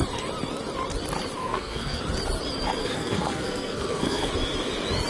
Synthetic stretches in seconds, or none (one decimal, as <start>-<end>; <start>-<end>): 1.4-2.0; 2.8-4.3